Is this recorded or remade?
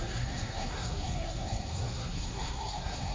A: remade